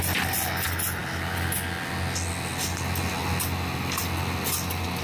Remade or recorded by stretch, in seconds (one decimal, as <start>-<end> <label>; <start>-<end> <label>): 0.0-5.0 recorded